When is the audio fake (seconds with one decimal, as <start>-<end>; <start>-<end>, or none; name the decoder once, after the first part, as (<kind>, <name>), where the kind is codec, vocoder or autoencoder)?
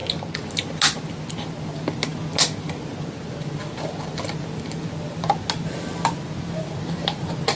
none